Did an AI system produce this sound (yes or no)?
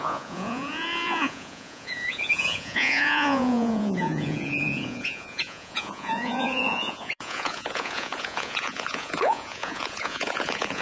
yes